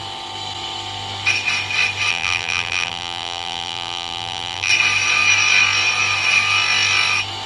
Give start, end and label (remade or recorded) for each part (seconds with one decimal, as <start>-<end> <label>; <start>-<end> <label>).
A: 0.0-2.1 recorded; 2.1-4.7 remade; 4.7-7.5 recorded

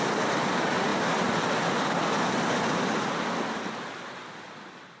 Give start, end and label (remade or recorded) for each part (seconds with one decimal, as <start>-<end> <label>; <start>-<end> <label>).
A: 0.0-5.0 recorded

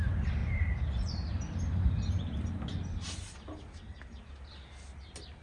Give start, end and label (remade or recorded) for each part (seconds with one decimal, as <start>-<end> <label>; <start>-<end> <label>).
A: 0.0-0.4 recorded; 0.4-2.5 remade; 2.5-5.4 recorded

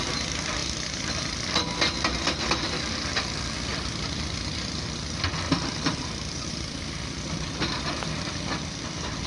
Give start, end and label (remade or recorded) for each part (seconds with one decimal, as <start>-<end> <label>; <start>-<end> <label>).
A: 0.0-0.6 recorded; 0.6-1.2 remade; 1.2-3.7 recorded; 3.7-8.8 remade; 8.8-9.3 recorded

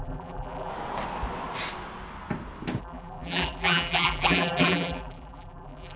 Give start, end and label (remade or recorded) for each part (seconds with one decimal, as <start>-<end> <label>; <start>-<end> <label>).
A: 0.0-0.7 remade; 0.7-2.8 recorded; 2.8-6.0 remade

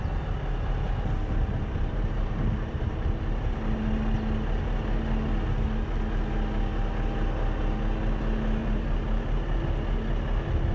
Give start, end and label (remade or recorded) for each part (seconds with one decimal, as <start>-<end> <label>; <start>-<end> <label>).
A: 0.0-1.2 recorded; 1.2-3.9 remade; 3.9-8.6 recorded; 8.6-9.6 remade; 9.6-10.7 recorded

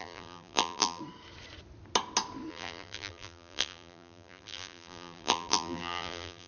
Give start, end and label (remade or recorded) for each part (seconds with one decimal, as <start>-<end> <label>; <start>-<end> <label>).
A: 0.0-1.0 remade; 1.0-2.5 recorded; 2.5-6.5 remade

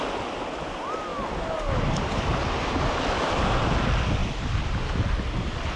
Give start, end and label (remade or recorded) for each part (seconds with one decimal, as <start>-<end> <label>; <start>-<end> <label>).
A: 0.0-4.2 recorded; 4.2-5.8 remade